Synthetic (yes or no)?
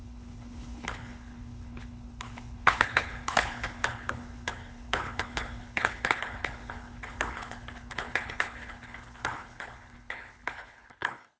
yes